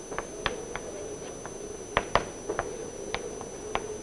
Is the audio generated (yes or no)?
no